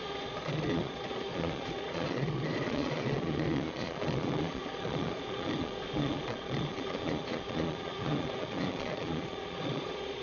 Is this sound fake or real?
fake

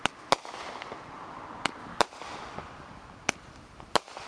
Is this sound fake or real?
real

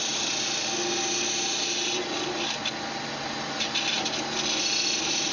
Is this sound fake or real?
real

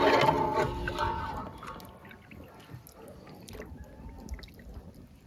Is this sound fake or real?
real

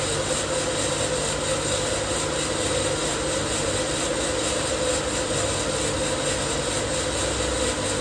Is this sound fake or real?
real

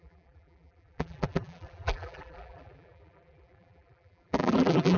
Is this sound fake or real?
fake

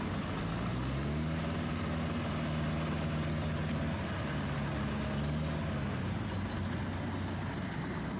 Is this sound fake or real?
real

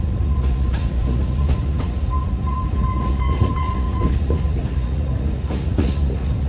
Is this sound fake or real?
fake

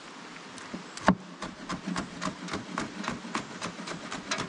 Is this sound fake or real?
real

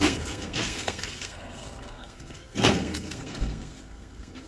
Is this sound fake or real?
fake